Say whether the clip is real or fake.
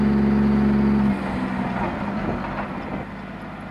real